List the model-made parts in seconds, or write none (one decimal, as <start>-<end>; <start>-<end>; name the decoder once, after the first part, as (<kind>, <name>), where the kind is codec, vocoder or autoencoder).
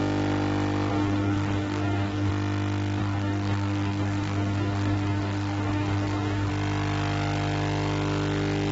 0.9-2.3 (codec, DAC); 3.0-6.5